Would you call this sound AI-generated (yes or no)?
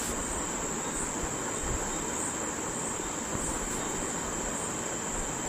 no